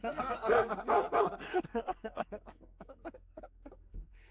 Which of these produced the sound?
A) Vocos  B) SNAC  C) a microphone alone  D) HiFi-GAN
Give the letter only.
B